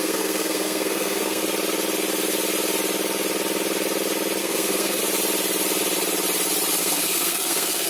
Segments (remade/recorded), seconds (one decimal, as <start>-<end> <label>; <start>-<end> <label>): 0.0-1.4 remade; 1.4-4.4 recorded; 4.4-5.0 remade; 5.0-6.8 recorded; 6.8-7.9 remade